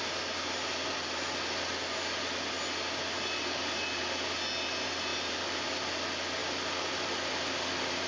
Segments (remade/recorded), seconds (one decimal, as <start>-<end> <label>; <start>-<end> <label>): 0.0-5.1 recorded; 5.1-5.9 remade; 5.9-6.4 recorded; 6.4-7.1 remade; 7.1-8.1 recorded